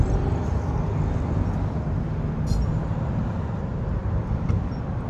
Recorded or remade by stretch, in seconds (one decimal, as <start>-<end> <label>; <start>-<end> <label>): 0.0-5.1 remade